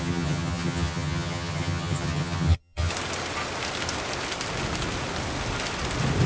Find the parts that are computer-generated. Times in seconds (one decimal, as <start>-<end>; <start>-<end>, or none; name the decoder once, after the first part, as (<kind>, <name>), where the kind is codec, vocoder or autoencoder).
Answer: 0.0-2.9 (vocoder, HiFi-GAN)